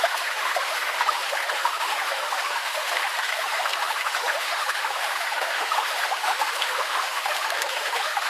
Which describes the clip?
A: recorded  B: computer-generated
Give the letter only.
B